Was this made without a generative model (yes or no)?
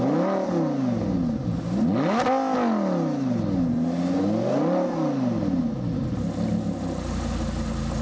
yes